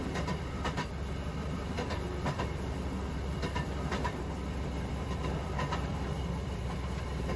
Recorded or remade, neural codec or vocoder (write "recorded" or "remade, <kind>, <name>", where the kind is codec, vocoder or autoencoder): remade, vocoder, BigVGAN v2